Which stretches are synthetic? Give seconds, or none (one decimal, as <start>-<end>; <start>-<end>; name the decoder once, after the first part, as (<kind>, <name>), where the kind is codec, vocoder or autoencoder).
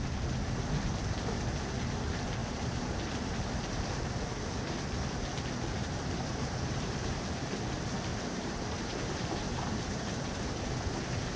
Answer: 2.4-4.1 (vocoder, BigVGAN v2); 5.8-7.5; 8.1-10.6